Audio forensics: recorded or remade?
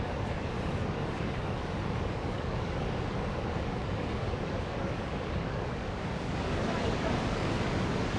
remade